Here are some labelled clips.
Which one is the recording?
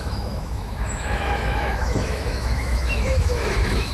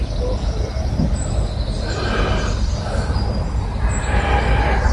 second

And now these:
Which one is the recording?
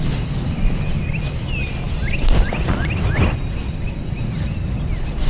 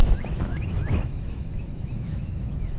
first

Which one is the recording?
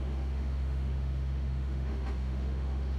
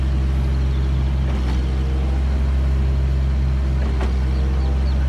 second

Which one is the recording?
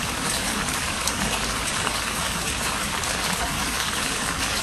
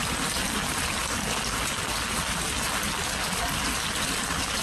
second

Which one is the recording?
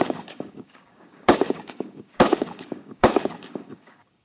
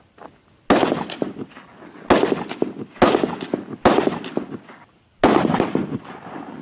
second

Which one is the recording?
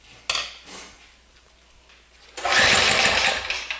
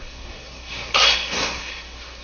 first